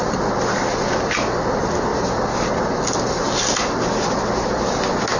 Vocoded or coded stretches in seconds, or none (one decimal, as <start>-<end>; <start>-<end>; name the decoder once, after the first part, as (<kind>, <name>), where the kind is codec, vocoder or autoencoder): none